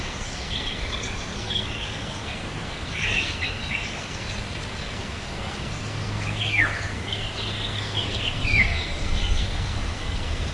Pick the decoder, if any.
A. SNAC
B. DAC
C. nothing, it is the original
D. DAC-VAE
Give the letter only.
A